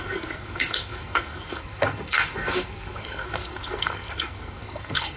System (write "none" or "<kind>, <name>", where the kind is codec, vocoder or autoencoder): codec, SNAC